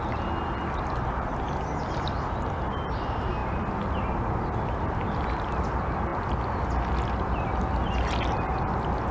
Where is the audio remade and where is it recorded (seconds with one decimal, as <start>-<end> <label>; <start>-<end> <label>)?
0.0-9.1 recorded